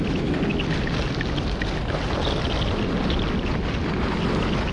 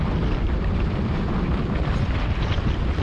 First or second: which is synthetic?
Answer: second